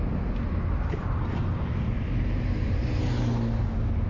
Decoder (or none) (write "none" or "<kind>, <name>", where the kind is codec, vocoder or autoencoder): none